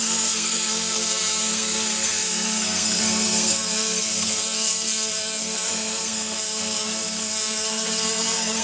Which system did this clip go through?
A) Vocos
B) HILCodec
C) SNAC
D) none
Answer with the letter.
C